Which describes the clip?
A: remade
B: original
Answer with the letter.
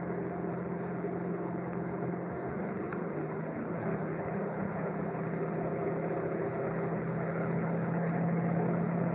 A